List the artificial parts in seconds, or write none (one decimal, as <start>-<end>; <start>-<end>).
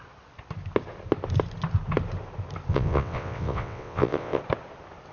2.7-4.4